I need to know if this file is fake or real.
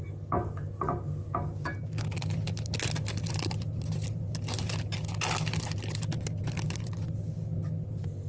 real